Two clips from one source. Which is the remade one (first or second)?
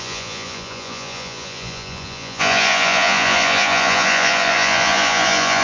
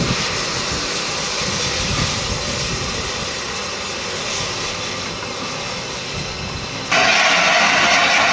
first